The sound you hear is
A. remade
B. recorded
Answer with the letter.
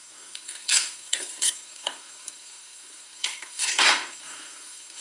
A